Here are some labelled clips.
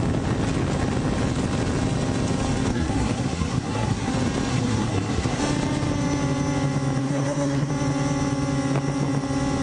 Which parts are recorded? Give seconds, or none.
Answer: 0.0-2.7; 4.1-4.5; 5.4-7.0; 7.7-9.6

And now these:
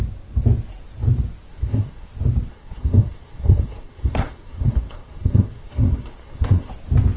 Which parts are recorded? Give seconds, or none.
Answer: 0.0-1.5; 2.1-2.5; 6.7-7.2

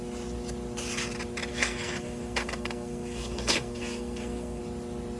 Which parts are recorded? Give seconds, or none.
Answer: 0.0-1.5; 4.6-5.2